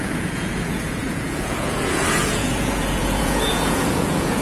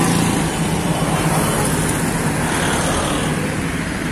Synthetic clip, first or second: first